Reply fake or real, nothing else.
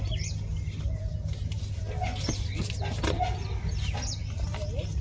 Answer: real